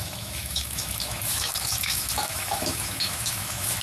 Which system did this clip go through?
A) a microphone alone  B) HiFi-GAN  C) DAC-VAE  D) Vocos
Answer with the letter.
C